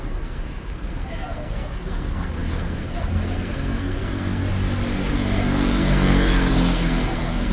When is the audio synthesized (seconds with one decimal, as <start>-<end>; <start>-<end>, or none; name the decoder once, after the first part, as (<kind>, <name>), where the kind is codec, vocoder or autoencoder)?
0.0-4.4 (codec, SNAC); 5.1-7.5